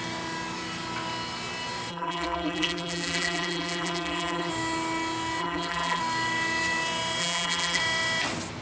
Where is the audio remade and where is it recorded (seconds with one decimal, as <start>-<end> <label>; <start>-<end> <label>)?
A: 0.0-1.9 recorded; 1.9-4.5 remade; 4.5-5.4 recorded; 5.4-6.0 remade; 6.0-7.2 recorded; 7.2-7.8 remade; 7.8-8.6 recorded